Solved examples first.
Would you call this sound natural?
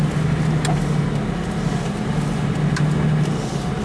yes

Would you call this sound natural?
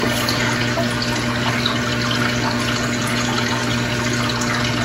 yes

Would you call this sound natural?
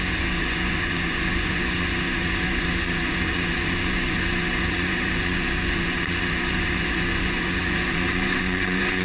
no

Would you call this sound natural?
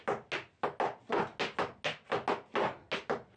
yes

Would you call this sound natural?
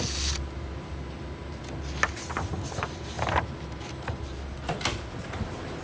yes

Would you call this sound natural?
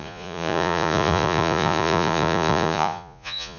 no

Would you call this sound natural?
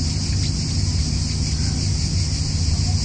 yes